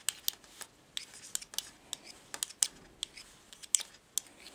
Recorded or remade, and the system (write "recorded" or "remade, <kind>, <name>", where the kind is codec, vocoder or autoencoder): recorded